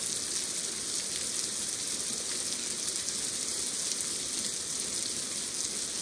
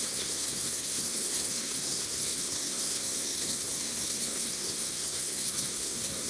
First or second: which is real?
first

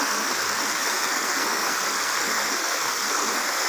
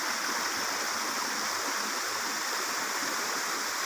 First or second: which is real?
second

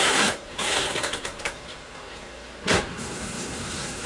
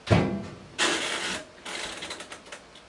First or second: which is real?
second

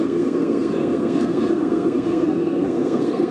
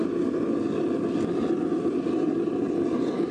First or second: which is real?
second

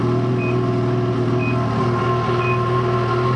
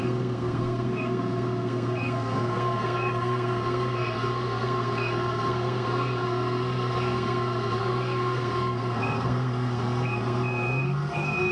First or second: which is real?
first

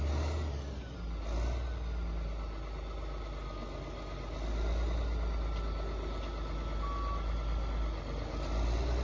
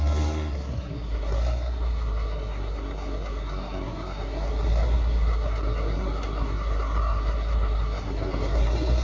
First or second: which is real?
first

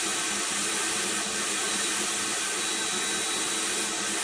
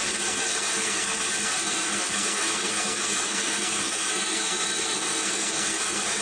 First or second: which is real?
first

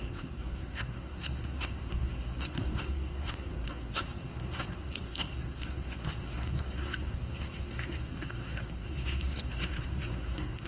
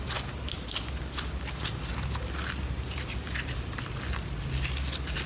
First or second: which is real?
second